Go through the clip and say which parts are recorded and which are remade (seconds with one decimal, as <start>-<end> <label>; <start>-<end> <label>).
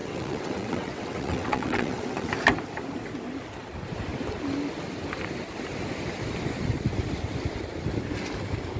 0.0-2.3 remade; 2.3-8.8 recorded